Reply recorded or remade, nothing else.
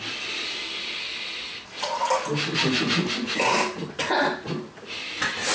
recorded